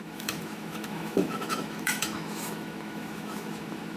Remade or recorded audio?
remade